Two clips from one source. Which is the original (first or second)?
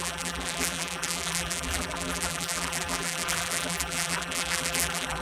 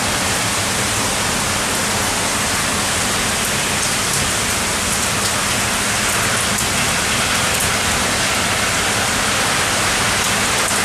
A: second